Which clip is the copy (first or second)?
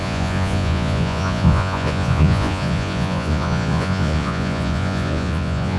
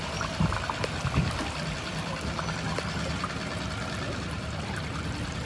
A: first